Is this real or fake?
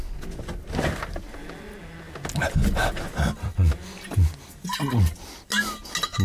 real